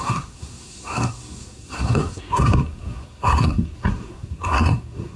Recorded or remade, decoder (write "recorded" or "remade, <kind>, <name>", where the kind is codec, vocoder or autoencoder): remade, codec, SNAC